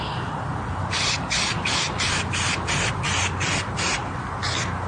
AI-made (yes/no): no